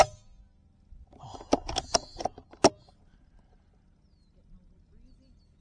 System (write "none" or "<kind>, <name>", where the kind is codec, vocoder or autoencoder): none